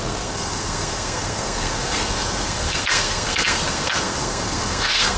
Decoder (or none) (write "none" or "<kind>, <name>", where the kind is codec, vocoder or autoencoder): codec, SNAC